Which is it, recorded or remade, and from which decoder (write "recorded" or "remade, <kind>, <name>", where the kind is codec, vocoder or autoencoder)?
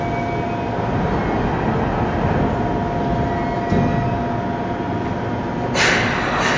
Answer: recorded